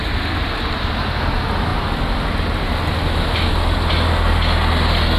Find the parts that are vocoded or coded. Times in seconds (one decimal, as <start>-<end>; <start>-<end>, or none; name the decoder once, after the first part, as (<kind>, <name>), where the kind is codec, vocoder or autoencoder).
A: none